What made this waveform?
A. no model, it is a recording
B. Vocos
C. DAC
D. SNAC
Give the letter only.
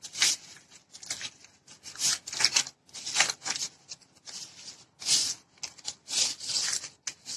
A